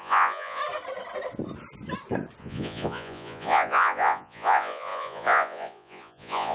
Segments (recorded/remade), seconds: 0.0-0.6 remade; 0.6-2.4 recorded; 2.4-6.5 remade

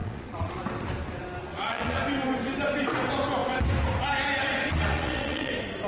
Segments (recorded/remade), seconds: 0.0-0.6 remade; 0.6-1.4 recorded; 1.4-2.0 remade; 2.0-4.7 recorded; 4.7-5.5 remade; 5.5-5.9 recorded

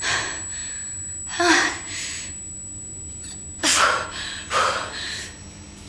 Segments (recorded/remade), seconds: 0.0-5.9 recorded